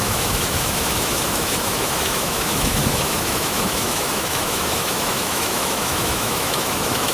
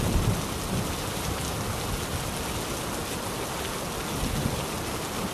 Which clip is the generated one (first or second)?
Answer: first